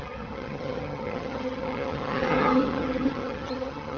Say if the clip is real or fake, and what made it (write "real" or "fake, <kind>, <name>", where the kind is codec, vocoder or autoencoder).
fake, vocoder, HiFi-GAN